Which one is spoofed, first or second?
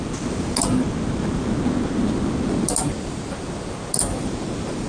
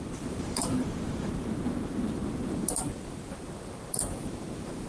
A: second